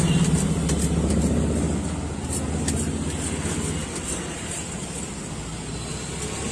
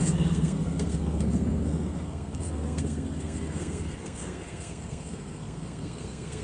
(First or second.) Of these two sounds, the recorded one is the first